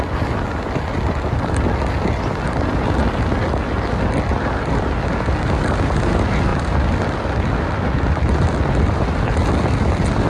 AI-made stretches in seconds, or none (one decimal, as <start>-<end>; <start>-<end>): none